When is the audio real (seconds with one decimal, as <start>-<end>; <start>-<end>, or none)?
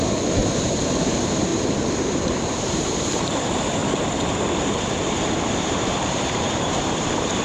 0.4-1.0; 1.5-2.0; 3.8-5.6